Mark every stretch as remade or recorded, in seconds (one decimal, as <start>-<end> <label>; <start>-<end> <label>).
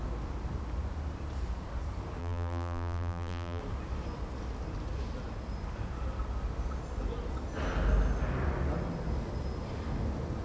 0.0-2.2 recorded; 2.2-3.6 remade; 3.6-10.4 recorded